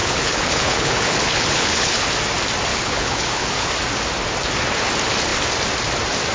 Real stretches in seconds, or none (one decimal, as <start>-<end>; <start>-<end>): 2.0-2.7; 3.7-6.3